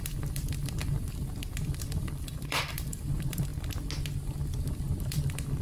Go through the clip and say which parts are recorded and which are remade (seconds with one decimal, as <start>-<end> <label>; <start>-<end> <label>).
0.0-0.8 remade; 0.8-1.6 recorded; 1.6-3.5 remade; 3.5-4.7 recorded; 4.7-5.6 remade